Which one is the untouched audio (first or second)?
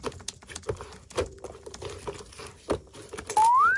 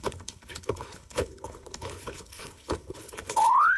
first